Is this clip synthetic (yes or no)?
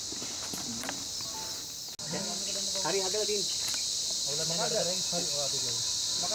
no